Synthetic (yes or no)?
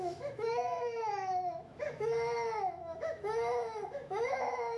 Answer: yes